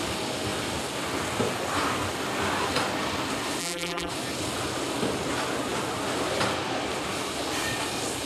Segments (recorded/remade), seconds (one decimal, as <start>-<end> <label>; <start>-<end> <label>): 0.0-3.6 recorded; 3.6-4.1 remade; 4.1-8.3 recorded